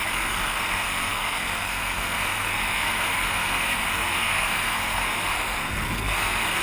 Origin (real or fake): fake